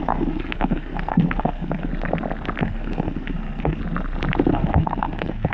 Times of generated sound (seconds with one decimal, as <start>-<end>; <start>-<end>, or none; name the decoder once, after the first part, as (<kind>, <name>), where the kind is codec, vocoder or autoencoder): 0.0-1.9 (codec, SNAC); 2.6-3.8; 4.5-5.5